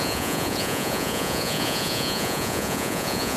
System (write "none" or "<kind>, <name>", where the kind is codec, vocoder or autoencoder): vocoder, Vocos